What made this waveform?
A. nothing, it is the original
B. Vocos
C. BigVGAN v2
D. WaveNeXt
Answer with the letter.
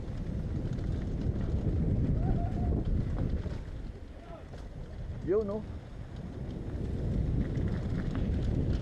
A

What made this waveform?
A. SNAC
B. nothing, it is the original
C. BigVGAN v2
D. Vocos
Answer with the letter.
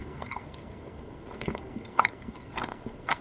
A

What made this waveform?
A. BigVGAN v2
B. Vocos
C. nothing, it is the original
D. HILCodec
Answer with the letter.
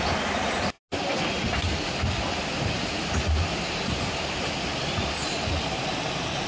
C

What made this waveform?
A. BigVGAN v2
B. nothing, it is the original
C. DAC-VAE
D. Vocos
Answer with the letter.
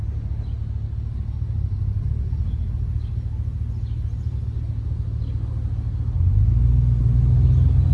B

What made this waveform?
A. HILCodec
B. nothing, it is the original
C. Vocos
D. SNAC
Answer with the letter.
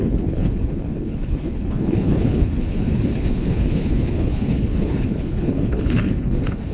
A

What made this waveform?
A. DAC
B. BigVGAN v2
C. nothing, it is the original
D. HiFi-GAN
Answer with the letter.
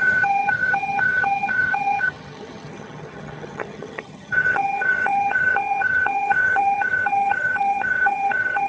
D